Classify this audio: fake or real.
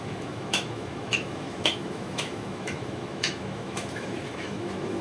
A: fake